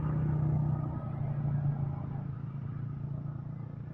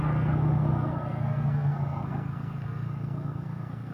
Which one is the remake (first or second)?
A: second